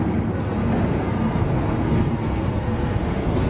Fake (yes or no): yes